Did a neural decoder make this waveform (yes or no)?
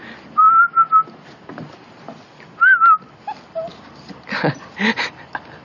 no